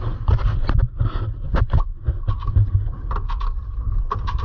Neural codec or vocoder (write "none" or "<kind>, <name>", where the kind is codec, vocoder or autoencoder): none